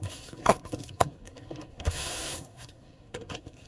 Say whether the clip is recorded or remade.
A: remade